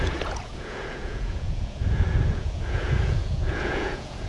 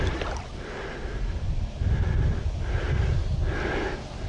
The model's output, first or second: first